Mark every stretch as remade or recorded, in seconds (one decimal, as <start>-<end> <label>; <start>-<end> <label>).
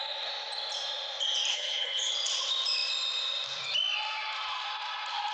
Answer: 0.0-1.5 recorded; 1.5-2.1 remade; 2.1-5.3 recorded